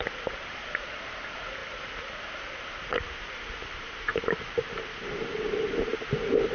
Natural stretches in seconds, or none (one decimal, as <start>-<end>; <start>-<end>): 5.9-6.5